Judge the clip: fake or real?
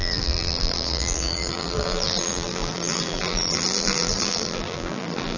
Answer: fake